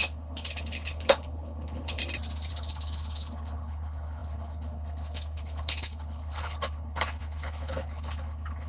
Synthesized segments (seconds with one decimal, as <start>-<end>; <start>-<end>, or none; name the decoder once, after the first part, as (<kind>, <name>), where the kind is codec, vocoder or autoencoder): 0.0-2.0 (codec, HILCodec); 2.5-8.7